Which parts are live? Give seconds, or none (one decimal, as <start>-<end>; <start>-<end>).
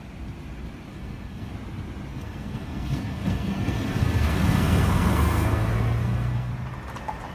0.0-0.9; 1.5-2.1; 6.5-7.3